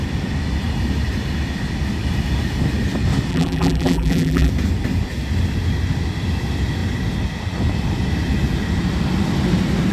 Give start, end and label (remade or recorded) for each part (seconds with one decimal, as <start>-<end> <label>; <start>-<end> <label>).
0.0-3.3 recorded; 3.3-4.5 remade; 4.5-9.9 recorded